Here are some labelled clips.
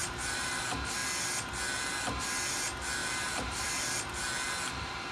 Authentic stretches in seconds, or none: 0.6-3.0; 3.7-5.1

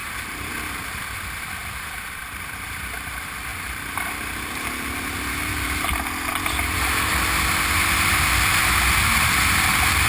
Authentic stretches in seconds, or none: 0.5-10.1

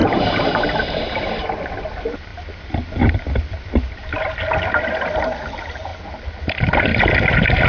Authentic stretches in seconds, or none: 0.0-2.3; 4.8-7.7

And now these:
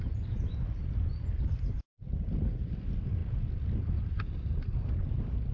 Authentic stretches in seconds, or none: 0.0-5.5

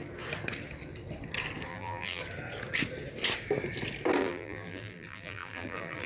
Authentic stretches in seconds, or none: 0.0-1.7; 2.2-4.2